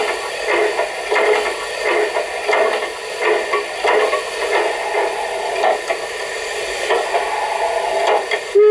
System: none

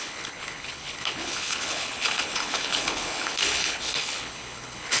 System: codec, HILCodec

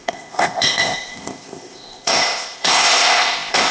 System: codec, ZipCodec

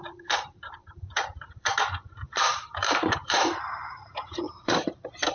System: vocoder, BigVGAN v2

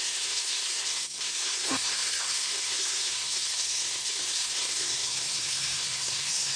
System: codec, SNAC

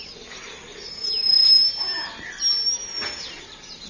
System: none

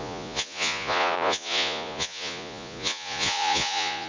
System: vocoder, Vocos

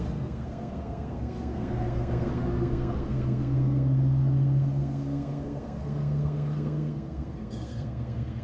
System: codec, SNAC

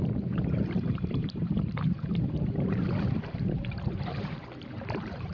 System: vocoder, BigVGAN v2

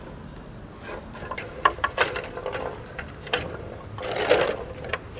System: vocoder, BigVGAN v2